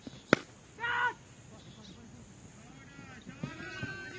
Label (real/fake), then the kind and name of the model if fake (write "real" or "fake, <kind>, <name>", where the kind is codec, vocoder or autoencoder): real